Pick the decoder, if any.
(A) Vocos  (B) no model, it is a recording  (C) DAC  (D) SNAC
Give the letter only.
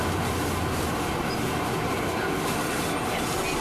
B